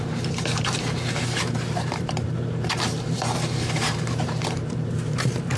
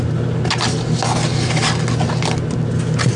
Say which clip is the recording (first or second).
second